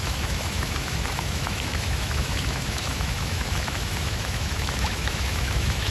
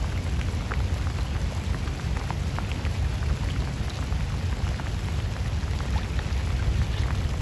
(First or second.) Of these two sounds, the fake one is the first